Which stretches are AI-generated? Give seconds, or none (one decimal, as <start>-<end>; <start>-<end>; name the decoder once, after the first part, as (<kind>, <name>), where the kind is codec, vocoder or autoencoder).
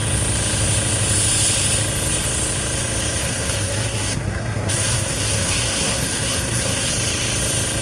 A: 3.2-6.9 (codec, SNAC)